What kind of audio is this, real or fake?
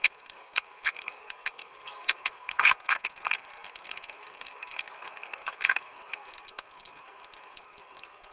fake